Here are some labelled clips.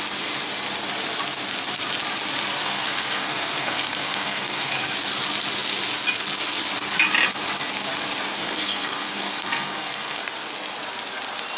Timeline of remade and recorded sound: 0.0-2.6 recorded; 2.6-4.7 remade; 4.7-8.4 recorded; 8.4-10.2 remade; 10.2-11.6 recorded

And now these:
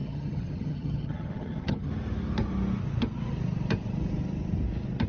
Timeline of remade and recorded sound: 0.0-1.9 remade; 1.9-5.1 recorded

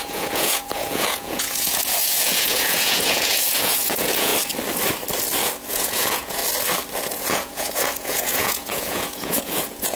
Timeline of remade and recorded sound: 0.0-4.3 remade; 4.3-5.7 recorded; 5.7-6.4 remade; 6.4-7.1 recorded; 7.1-10.0 remade

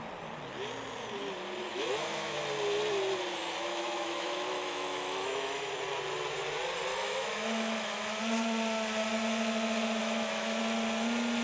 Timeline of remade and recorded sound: 0.0-1.7 recorded; 1.7-2.4 remade; 2.4-3.7 recorded; 3.7-5.7 remade; 5.7-6.9 recorded; 6.9-8.2 remade; 8.2-10.0 recorded; 10.0-10.6 remade; 10.6-11.4 recorded

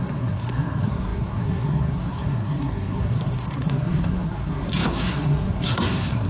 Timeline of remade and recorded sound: 0.0-6.3 remade